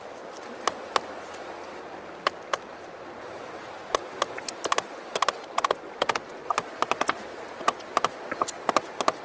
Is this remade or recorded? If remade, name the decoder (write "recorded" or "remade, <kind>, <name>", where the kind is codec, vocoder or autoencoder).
recorded